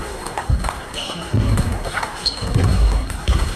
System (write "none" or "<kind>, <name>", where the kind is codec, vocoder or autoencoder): codec, SNAC